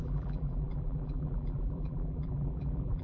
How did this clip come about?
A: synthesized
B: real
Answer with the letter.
A